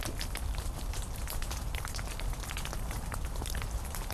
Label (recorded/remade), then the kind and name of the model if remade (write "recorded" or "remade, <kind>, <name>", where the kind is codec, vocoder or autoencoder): remade, vocoder, BigVGAN v2